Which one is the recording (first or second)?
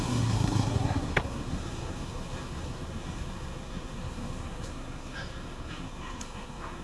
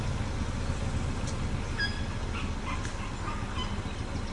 second